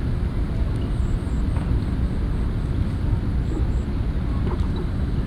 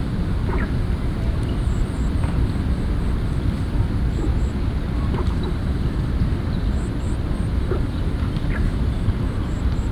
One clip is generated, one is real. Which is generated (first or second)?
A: second